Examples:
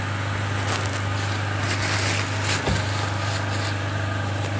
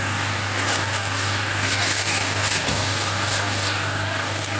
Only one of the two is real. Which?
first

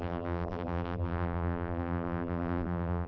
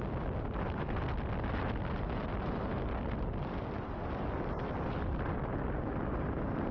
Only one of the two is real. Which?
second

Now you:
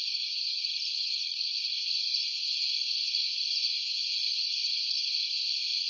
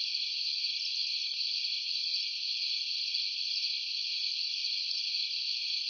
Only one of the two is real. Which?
second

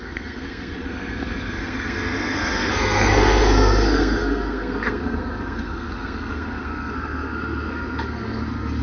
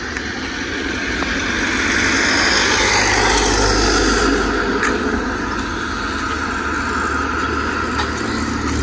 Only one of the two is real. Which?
second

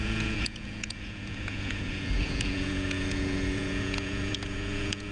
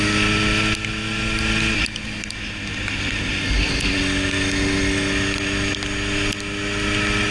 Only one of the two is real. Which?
second